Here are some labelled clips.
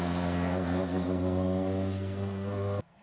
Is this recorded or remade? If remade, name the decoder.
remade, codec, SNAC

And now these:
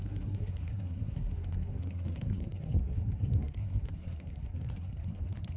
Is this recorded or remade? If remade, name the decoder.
remade, codec, SNAC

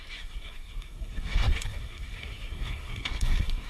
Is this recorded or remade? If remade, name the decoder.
remade, codec, SNAC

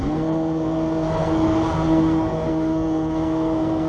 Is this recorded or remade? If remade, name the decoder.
remade, codec, SNAC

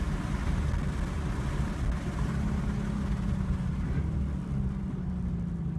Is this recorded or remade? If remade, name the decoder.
recorded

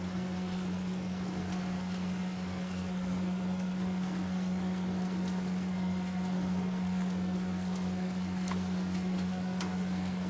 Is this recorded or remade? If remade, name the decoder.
remade, codec, SNAC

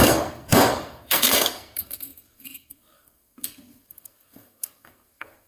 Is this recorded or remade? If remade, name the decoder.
remade, codec, SNAC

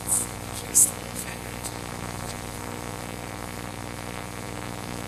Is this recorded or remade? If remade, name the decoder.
remade, codec, SNAC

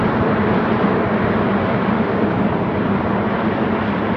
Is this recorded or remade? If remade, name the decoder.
recorded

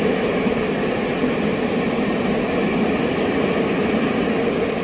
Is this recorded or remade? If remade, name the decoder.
recorded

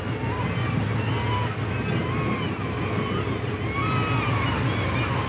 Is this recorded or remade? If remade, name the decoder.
recorded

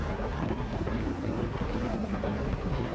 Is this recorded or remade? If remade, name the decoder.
remade, codec, SNAC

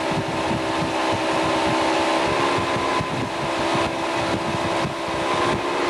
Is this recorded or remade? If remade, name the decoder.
recorded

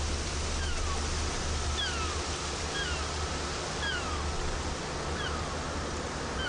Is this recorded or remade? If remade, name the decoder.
recorded